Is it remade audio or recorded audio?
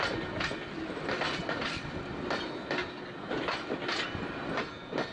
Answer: recorded